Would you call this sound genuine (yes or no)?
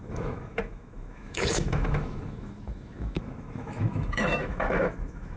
no